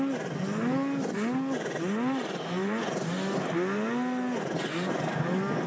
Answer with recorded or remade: recorded